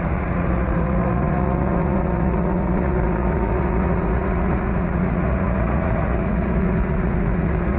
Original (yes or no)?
no